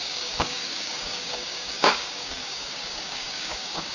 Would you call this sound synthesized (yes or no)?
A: yes